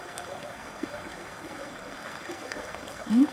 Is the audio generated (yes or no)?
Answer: yes